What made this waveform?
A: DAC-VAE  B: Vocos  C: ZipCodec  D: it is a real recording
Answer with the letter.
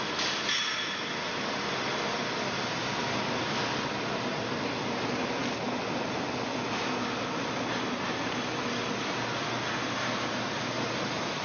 D